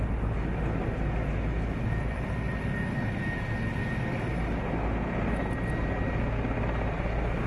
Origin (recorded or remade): recorded